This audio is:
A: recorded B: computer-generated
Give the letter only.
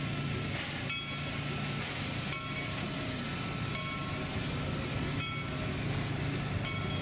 A